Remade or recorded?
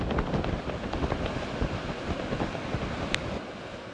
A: recorded